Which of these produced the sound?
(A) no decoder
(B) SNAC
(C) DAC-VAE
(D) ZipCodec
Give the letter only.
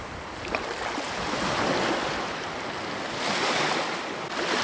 A